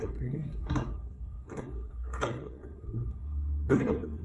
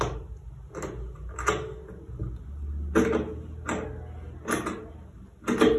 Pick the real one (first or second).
second